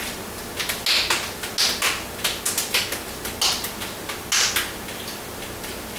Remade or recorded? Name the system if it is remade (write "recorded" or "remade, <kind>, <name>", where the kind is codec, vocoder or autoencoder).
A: recorded